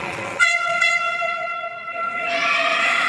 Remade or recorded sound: remade